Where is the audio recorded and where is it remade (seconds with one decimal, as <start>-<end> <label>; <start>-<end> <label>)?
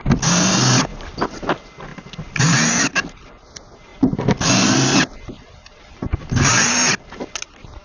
0.0-7.8 recorded